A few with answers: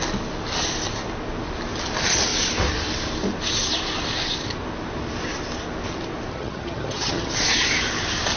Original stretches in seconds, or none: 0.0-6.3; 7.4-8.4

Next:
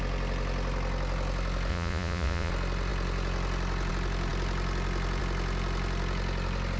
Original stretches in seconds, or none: 0.0-1.7; 2.5-6.8

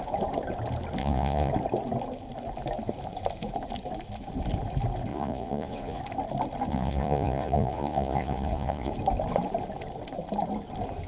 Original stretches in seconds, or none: 0.0-1.0; 1.5-5.1; 6.0-6.7; 8.9-11.1

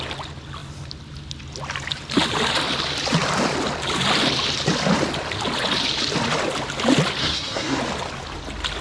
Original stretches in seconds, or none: 0.0-7.2; 7.8-8.8

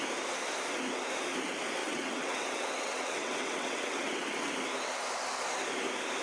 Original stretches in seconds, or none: 0.0-1.8; 4.5-6.2

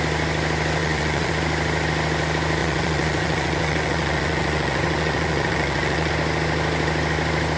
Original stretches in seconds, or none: 0.0-0.8; 1.3-2.6; 6.1-7.6

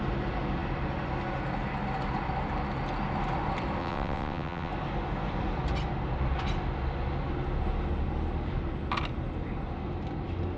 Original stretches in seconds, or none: 0.0-3.8; 4.7-10.6

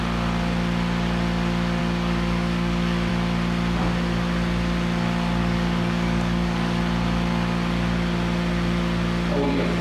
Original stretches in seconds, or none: 0.0-1.8; 3.1-5.4; 6.8-9.8